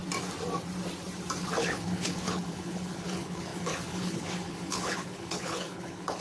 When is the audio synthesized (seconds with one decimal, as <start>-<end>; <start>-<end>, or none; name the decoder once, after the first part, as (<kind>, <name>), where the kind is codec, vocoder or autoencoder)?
1.4-6.2 (codec, HILCodec)